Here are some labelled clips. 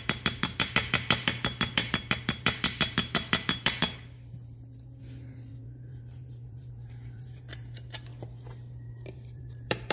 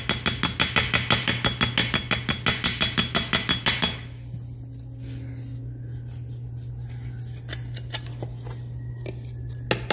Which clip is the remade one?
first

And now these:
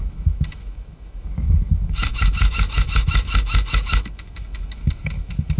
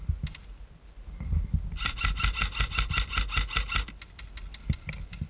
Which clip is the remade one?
first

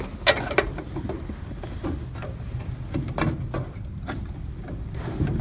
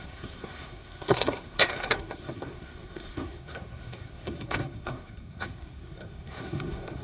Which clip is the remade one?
second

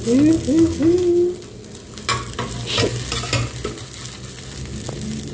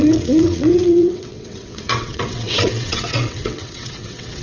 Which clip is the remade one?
second